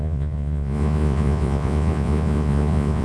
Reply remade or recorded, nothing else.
remade